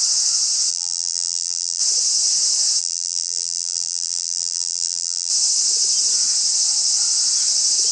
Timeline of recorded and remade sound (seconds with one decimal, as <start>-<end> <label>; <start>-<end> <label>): 0.0-0.7 recorded; 0.7-1.8 remade; 1.8-2.8 recorded; 2.8-5.3 remade; 5.3-7.9 recorded